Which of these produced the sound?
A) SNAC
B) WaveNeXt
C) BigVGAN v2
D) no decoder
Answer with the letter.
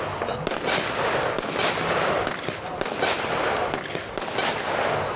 D